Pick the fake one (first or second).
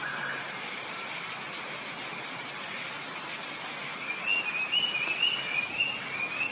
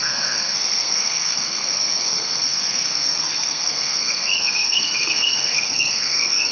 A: second